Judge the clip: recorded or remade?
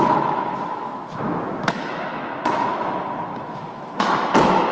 remade